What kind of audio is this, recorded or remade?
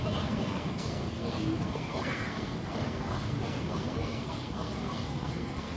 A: remade